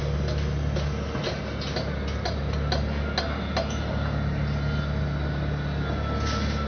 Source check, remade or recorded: recorded